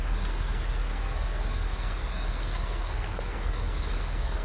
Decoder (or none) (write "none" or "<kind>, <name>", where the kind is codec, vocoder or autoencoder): codec, SNAC